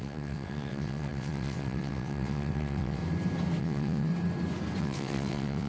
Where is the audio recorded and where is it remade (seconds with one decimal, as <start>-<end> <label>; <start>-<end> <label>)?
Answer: 0.0-3.0 remade; 3.0-3.6 recorded; 3.6-4.1 remade; 4.1-4.8 recorded; 4.8-5.7 remade